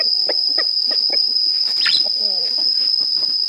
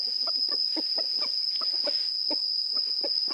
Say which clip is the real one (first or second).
second